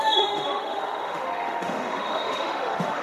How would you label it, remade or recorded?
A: remade